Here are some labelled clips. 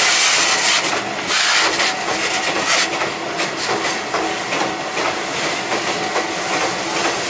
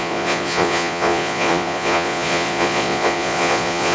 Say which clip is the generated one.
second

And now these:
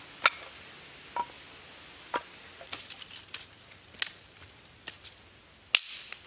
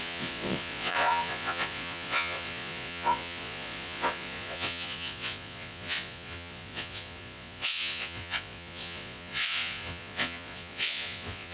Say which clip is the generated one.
second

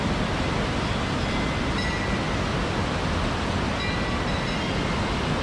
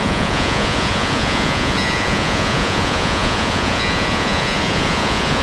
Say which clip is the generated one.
second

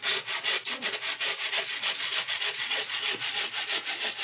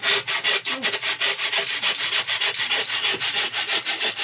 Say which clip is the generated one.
first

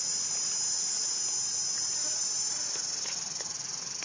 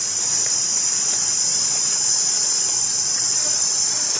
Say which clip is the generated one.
second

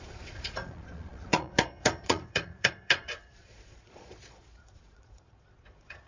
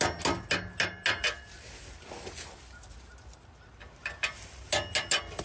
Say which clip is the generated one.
first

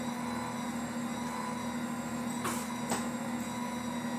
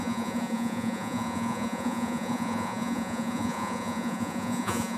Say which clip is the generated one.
second